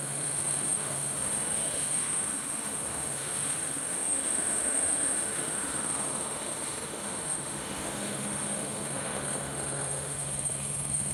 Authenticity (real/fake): fake